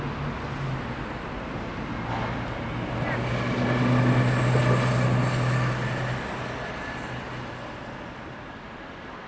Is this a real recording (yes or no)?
yes